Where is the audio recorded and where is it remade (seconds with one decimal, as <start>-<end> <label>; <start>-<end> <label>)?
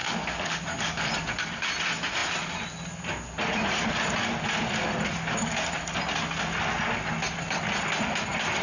0.0-1.1 remade; 1.1-8.6 recorded